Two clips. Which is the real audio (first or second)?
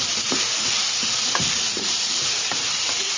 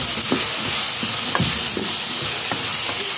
second